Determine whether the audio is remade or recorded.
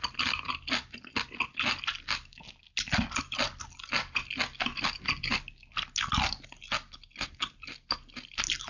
recorded